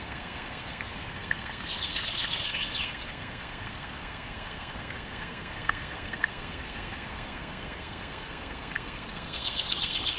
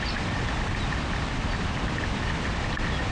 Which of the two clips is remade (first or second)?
first